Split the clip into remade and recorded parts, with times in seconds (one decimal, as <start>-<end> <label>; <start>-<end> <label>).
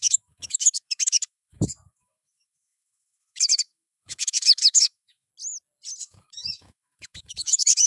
0.0-5.3 remade; 5.3-6.0 recorded; 6.0-7.9 remade